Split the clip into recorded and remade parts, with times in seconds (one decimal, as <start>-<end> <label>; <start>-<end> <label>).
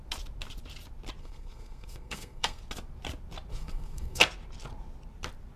0.0-1.2 recorded; 1.2-2.6 remade; 2.6-3.5 recorded; 3.5-4.2 remade; 4.2-5.6 recorded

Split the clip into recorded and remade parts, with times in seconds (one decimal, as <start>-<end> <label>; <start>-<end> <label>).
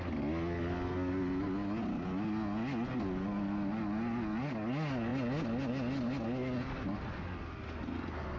0.0-8.4 recorded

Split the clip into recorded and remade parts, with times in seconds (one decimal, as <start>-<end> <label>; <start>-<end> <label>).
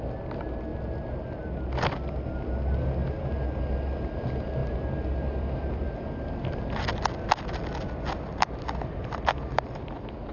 0.0-10.3 recorded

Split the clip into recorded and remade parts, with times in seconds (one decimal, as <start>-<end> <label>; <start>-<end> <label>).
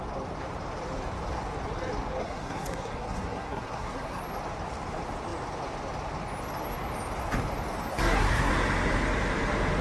0.0-2.2 recorded; 2.2-4.2 remade; 4.2-7.9 recorded; 7.9-8.5 remade; 8.5-9.8 recorded